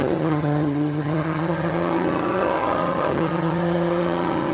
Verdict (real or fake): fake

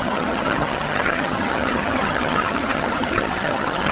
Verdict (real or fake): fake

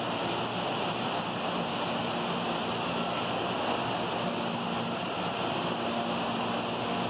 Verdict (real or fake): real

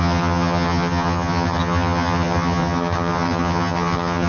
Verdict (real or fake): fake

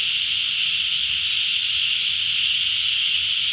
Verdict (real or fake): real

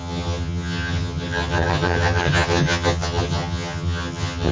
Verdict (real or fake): fake